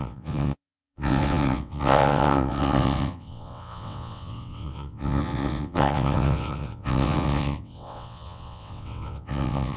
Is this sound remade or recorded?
remade